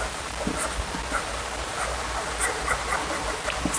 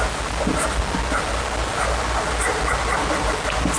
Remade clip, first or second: first